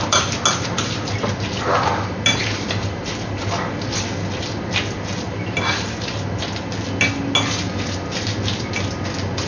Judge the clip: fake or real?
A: real